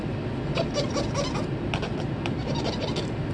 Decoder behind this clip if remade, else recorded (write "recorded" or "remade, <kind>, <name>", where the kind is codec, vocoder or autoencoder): recorded